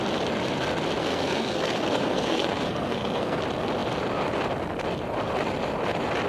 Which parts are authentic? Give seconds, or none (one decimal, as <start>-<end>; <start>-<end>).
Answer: 0.0-1.0; 3.4-6.3